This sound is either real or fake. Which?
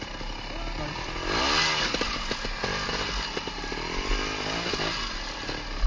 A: real